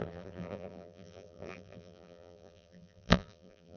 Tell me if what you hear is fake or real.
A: fake